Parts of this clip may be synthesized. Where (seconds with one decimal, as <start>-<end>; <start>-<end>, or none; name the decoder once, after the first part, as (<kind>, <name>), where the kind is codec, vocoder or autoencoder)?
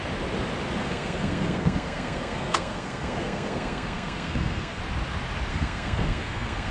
0.8-4.8 (codec, SNAC); 5.5-6.7